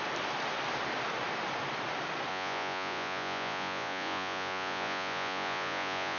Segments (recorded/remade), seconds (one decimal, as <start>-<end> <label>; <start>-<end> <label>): 0.0-2.3 recorded; 2.3-6.2 remade